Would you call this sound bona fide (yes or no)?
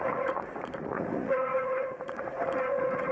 no